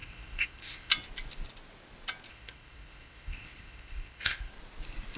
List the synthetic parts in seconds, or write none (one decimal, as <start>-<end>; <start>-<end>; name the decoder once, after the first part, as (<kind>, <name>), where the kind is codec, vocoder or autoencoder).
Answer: 0.0-0.9 (codec, ZipCodec); 2.3-4.5